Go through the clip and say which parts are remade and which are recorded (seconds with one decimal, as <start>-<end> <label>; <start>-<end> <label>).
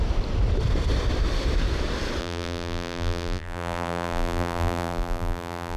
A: 0.0-2.2 recorded; 2.2-5.8 remade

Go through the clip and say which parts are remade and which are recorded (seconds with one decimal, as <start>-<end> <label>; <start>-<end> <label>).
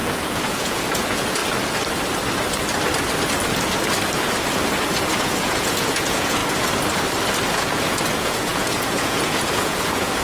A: 0.0-1.4 remade; 1.4-5.1 recorded; 5.1-6.4 remade; 6.4-7.5 recorded; 7.5-10.2 remade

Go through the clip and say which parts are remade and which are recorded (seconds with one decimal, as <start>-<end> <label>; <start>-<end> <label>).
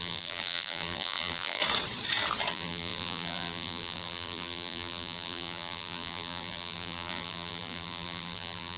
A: 0.0-1.6 remade; 1.6-2.5 recorded; 2.5-8.8 remade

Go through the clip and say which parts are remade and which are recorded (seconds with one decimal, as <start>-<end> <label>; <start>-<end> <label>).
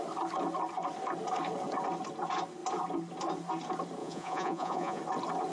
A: 0.0-4.0 recorded; 4.0-5.0 remade; 5.0-5.5 recorded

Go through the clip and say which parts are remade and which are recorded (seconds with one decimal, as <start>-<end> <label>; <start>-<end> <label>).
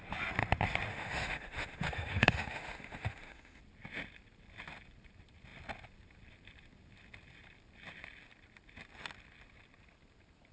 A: 0.0-0.9 recorded; 0.9-3.6 remade; 3.6-10.5 recorded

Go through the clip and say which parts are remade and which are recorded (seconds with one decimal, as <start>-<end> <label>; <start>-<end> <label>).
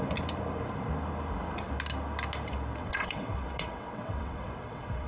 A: 0.0-2.8 recorded; 2.8-5.1 remade